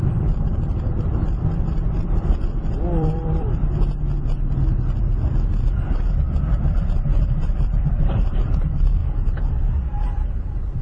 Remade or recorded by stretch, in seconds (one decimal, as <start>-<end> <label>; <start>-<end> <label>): 0.0-3.6 remade; 3.6-6.5 recorded; 6.5-9.0 remade; 9.0-10.8 recorded